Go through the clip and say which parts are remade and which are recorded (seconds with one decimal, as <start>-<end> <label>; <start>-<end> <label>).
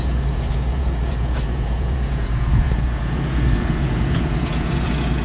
0.0-5.2 remade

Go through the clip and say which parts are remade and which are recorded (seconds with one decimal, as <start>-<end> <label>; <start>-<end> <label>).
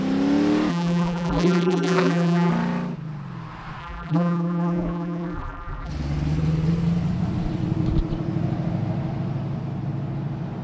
0.0-0.7 recorded; 0.7-2.5 remade; 2.5-3.8 recorded; 3.8-5.9 remade; 5.9-10.6 recorded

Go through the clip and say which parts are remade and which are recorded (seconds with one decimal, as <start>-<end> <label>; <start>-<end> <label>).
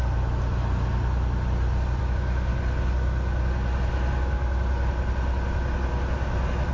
0.0-2.0 recorded; 2.0-2.5 remade; 2.5-6.7 recorded